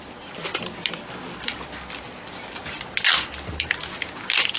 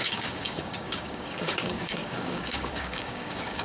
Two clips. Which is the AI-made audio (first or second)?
second